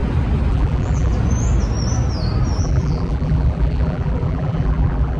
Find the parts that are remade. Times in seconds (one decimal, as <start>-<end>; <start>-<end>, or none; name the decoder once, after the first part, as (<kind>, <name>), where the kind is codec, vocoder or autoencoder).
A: 0.5-1.1 (vocoder, BigVGAN v2); 2.6-5.2

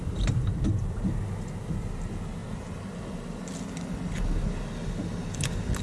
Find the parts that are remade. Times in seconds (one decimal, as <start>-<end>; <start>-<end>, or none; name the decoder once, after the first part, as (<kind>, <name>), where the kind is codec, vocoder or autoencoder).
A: 0.0-1.1 (vocoder, BigVGAN v2); 2.4-3.4

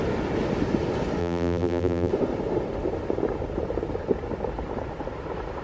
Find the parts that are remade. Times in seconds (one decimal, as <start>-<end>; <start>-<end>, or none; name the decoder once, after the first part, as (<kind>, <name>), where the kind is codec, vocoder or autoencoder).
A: 1.2-2.1 (vocoder, BigVGAN v2)

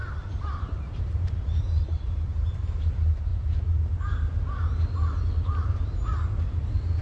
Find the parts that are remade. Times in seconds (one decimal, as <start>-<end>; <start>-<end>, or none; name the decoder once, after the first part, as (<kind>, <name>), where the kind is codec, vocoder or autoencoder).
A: 0.0-2.6 (vocoder, BigVGAN v2); 3.3-4.1

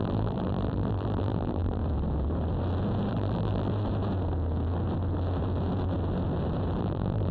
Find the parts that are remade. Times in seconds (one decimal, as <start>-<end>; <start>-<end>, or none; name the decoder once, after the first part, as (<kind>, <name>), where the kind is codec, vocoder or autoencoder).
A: 0.0-1.8 (vocoder, BigVGAN v2); 3.1-3.7; 6.8-7.3